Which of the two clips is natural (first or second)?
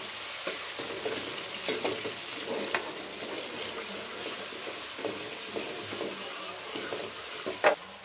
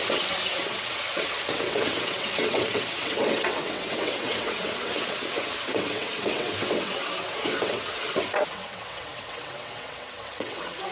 first